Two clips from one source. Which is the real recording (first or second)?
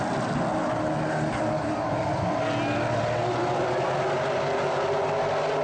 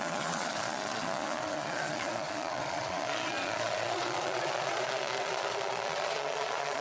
first